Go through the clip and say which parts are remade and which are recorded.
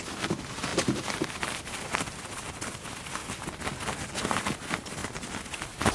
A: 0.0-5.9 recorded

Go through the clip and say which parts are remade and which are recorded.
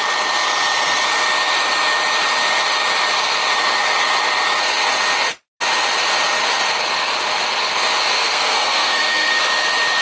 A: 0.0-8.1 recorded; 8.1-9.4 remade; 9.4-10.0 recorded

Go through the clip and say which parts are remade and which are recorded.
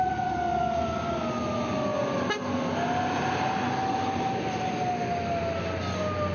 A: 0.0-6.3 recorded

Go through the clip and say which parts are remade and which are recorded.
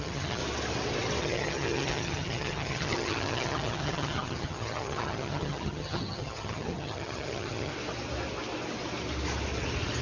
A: 0.0-0.4 remade; 0.4-1.2 recorded; 1.2-7.7 remade; 7.7-10.0 recorded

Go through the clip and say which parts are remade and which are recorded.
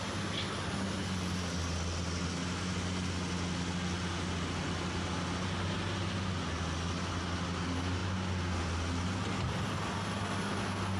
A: 0.0-11.0 recorded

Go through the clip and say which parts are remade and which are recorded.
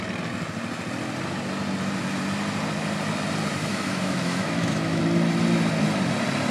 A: 0.0-3.7 recorded; 3.7-5.0 remade; 5.0-6.5 recorded